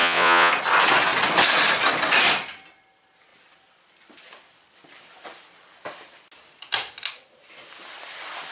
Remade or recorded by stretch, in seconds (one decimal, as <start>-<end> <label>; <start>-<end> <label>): 0.0-0.5 remade; 0.5-8.5 recorded